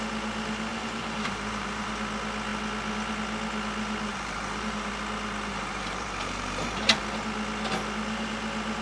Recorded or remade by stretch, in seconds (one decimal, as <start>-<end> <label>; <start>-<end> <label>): 0.0-0.7 recorded; 0.7-1.9 remade; 1.9-4.1 recorded; 4.1-4.9 remade; 4.9-5.5 recorded; 5.5-7.0 remade; 7.0-8.8 recorded